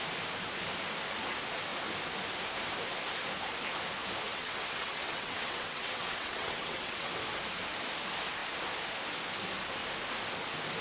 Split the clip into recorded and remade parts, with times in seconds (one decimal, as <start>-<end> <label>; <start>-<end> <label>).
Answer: 0.0-4.3 recorded; 4.3-7.1 remade; 7.1-10.8 recorded